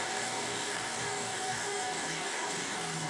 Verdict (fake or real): fake